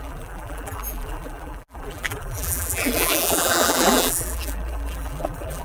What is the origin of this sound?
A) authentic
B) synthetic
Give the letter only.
B